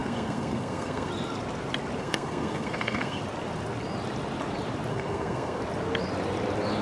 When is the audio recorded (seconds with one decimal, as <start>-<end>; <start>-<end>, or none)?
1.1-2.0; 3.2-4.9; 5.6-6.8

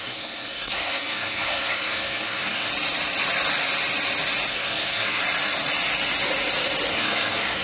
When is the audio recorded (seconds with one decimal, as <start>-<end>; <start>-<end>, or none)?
2.7-4.5; 5.2-6.9

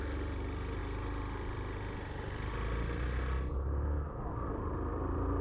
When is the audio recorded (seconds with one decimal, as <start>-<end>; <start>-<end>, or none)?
0.0-5.4

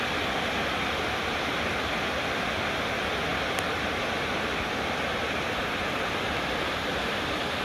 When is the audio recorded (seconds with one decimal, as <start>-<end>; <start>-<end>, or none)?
0.0-7.6